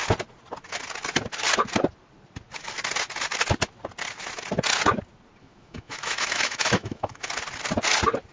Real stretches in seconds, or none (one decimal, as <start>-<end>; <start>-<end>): 0.0-5.4; 7.3-8.3